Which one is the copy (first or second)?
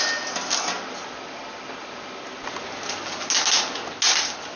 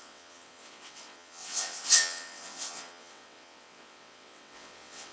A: second